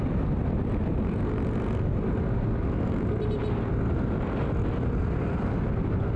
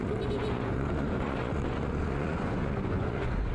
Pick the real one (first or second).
first